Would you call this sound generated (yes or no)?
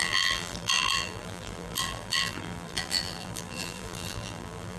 yes